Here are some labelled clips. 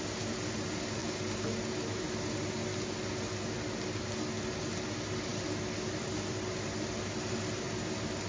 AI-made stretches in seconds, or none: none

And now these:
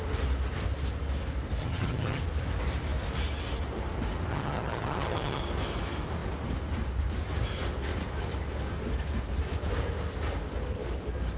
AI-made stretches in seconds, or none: 1.6-2.2 (vocoder, HiFi-GAN); 4.3-5.4

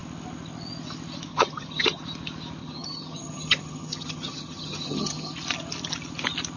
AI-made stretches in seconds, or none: 1.3-2.0 (vocoder, HiFi-GAN); 2.6-5.3

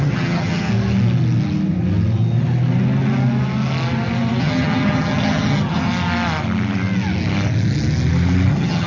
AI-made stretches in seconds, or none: 0.0-0.7 (vocoder, HiFi-GAN); 4.4-5.9; 8.5-8.9